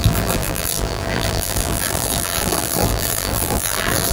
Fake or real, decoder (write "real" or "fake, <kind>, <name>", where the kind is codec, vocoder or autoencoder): fake, vocoder, BigVGAN v2